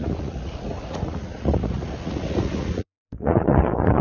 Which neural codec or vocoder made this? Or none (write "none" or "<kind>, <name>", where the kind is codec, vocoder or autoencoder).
vocoder, Vocos